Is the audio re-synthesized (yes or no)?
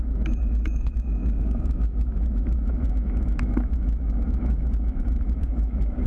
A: yes